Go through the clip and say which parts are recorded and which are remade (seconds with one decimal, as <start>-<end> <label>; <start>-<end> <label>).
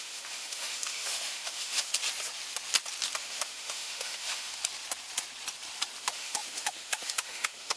0.0-1.9 remade; 1.9-3.2 recorded; 3.2-4.6 remade; 4.6-6.0 recorded; 6.0-7.8 remade